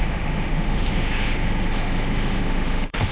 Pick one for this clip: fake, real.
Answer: fake